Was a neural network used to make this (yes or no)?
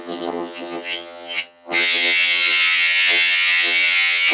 yes